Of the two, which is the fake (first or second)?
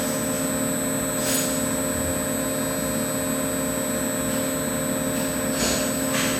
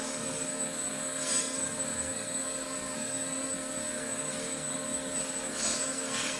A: second